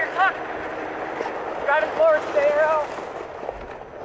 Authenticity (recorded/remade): recorded